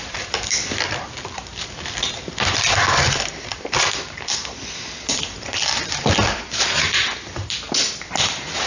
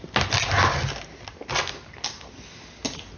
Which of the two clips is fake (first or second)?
first